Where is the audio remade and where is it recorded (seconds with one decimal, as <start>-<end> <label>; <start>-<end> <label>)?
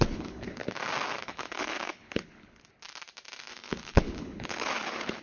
0.0-0.6 remade; 0.6-1.2 recorded; 1.2-2.6 remade; 2.6-3.5 recorded; 3.5-5.2 remade